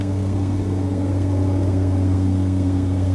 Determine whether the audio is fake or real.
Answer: fake